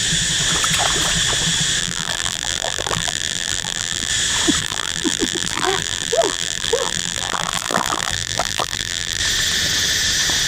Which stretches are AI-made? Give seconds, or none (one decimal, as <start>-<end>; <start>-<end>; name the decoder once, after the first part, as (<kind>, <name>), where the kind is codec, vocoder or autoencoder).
1.8-4.1 (vocoder, BigVGAN v2); 4.6-9.2